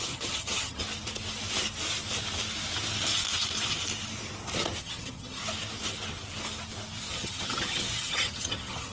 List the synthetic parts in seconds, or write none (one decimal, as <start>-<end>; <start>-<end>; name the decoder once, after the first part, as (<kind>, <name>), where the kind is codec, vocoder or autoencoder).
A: 0.0-0.8 (vocoder, HiFi-GAN); 4.8-5.4; 7.1-8.9